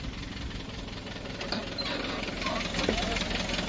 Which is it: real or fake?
real